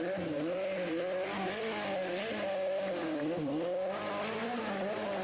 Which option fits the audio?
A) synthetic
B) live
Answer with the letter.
B